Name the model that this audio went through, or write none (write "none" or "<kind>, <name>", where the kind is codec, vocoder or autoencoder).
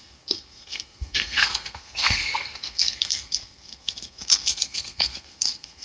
codec, SNAC